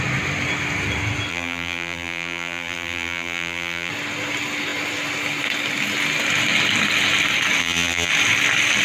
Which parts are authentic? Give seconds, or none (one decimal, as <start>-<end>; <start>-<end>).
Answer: 0.0-1.3; 3.9-7.6; 8.1-8.8